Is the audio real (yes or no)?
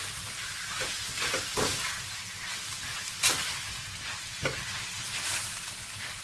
yes